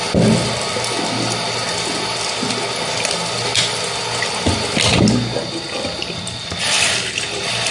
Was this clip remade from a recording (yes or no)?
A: no